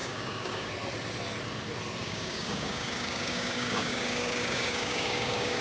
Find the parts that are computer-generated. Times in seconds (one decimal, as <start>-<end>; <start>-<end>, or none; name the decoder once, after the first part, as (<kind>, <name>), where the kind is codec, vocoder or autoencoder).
0.0-0.7 (codec, DAC); 2.0-5.6